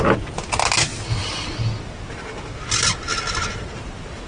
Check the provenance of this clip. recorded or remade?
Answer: recorded